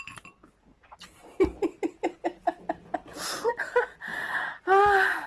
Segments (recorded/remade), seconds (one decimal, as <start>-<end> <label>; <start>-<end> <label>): 0.0-5.3 recorded